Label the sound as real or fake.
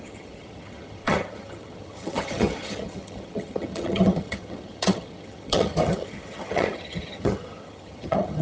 fake